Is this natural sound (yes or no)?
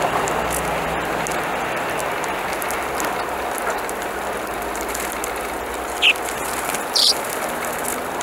yes